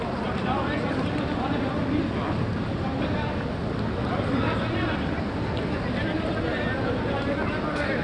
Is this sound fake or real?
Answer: real